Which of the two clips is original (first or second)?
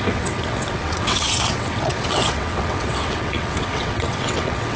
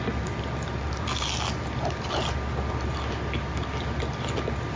second